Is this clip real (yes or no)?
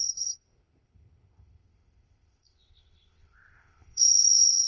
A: no